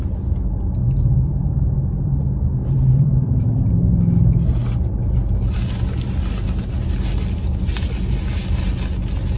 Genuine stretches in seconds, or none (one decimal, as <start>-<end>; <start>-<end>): 0.0-0.8; 2.2-2.6; 3.7-9.4